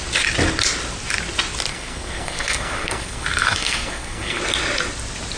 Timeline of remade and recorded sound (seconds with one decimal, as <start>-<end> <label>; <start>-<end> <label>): 0.0-1.7 recorded; 1.7-4.4 remade; 4.4-5.4 recorded